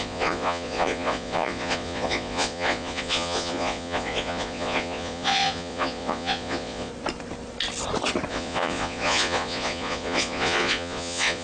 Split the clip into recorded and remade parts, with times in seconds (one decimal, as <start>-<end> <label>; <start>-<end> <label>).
0.0-6.9 remade; 6.9-8.3 recorded; 8.3-11.4 remade